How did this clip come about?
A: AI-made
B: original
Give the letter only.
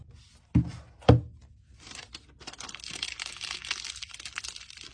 B